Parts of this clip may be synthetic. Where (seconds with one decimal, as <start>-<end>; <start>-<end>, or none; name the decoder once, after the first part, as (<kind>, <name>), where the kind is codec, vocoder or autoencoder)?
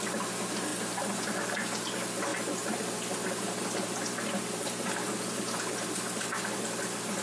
0.7-1.2 (vocoder, BigVGAN v2); 2.3-6.6